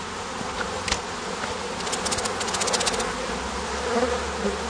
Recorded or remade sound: recorded